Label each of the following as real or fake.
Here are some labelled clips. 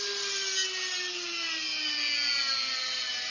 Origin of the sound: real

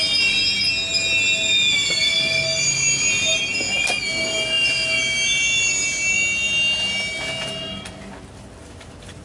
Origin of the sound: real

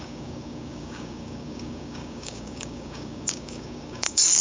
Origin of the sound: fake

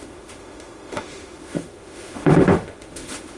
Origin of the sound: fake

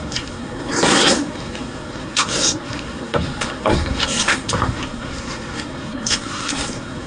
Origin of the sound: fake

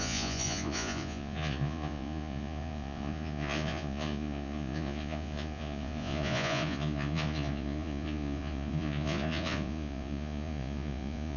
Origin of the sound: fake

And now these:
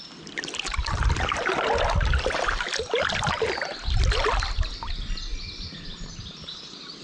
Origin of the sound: real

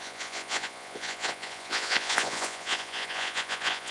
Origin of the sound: fake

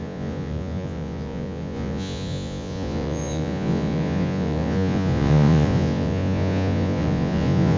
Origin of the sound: fake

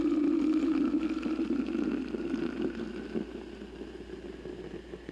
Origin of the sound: real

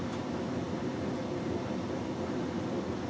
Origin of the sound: real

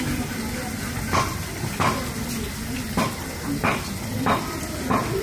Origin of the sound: real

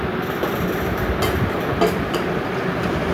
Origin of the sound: real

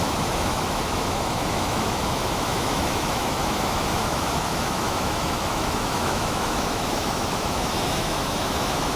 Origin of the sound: fake